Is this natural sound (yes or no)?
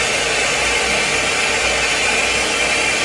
yes